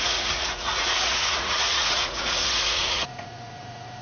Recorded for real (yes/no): no